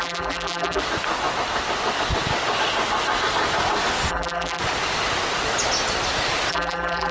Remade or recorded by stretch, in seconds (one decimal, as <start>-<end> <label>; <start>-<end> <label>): 0.0-0.8 remade; 0.8-4.1 recorded; 4.1-4.6 remade; 4.6-6.5 recorded; 6.5-7.1 remade

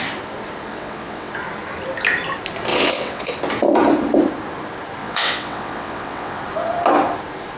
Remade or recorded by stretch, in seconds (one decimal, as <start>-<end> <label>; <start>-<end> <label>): 0.0-0.7 recorded; 0.7-1.3 remade; 1.3-2.7 recorded; 2.7-3.3 remade; 3.3-5.0 recorded; 5.0-6.4 remade; 6.4-7.6 recorded